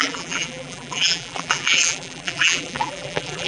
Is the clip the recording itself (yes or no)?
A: no